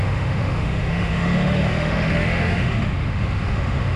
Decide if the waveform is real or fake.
fake